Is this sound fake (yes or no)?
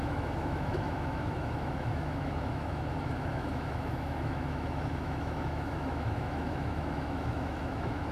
yes